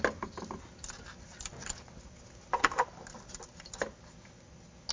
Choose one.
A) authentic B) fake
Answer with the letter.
A